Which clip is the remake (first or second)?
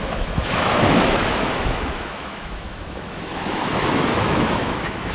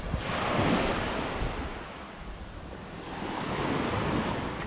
first